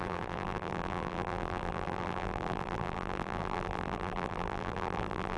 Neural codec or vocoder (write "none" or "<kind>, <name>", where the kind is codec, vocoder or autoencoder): vocoder, BigVGAN v2